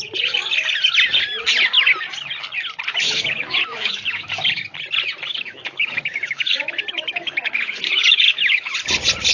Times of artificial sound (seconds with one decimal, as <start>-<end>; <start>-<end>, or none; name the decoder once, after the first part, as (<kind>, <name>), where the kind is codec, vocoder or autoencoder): 2.9-4.3 (autoencoder, DAC-VAE); 5.3-8.7